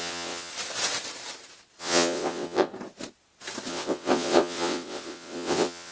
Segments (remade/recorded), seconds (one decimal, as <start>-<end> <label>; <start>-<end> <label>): 0.0-0.5 remade; 0.5-1.8 recorded; 1.8-2.7 remade; 2.7-3.7 recorded; 3.7-5.9 remade